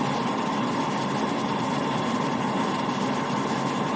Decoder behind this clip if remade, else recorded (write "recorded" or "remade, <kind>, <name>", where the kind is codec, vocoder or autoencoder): recorded